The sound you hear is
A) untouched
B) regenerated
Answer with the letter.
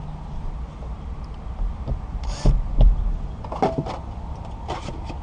A